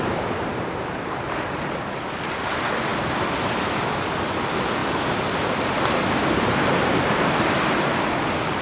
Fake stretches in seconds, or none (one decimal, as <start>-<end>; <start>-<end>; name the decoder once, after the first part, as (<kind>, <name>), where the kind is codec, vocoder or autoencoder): none